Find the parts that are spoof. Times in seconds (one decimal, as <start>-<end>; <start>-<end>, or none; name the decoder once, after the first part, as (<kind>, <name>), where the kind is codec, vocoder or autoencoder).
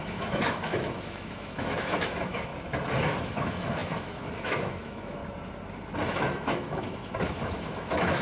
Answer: 0.0-2.5 (autoencoder, DAC-VAE); 3.2-5.2; 6.1-8.2